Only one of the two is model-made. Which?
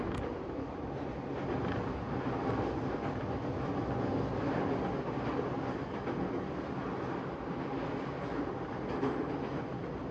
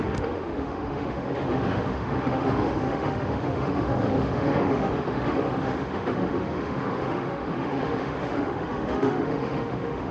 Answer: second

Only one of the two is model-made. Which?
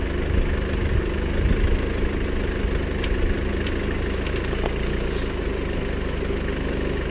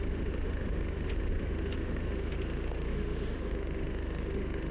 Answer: second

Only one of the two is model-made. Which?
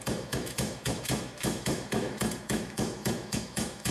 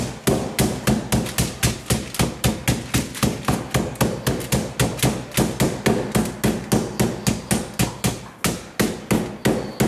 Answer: first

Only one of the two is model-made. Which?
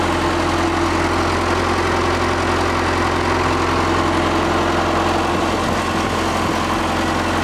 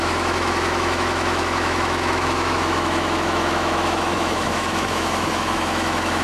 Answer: second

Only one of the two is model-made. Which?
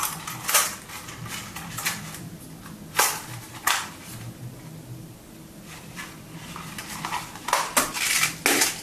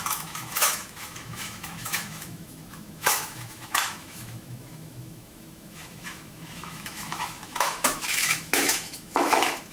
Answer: second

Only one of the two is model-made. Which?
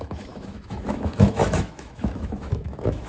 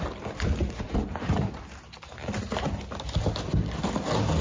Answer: first